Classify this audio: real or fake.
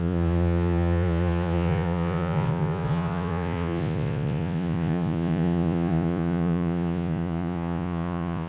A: fake